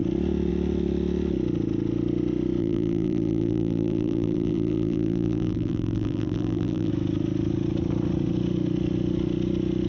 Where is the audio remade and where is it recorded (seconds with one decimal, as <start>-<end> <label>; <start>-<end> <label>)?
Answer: 0.0-2.6 recorded; 2.6-6.9 remade; 6.9-9.9 recorded